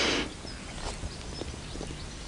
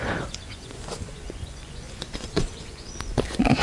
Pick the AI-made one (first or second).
second